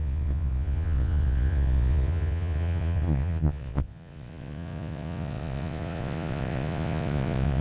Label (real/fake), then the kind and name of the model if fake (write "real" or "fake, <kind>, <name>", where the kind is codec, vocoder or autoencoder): fake, vocoder, Vocos